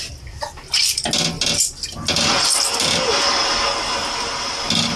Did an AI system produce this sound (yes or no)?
no